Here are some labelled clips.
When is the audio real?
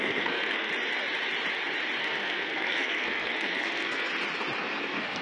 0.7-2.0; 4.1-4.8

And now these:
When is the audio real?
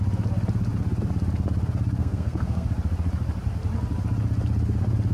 0.0-2.0; 2.7-5.1